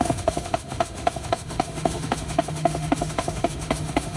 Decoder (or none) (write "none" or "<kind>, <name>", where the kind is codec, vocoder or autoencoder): autoencoder, DAC-VAE